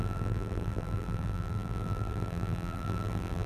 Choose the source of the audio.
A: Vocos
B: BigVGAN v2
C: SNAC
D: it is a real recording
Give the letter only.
B